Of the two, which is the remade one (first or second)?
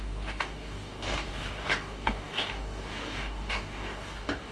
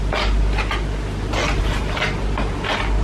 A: first